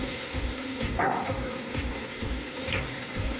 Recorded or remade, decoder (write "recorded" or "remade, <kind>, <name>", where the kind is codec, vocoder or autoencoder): remade, codec, SNAC